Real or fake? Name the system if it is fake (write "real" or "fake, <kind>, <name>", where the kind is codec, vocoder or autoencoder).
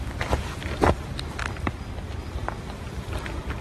real